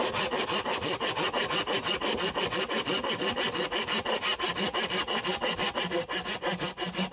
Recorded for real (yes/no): yes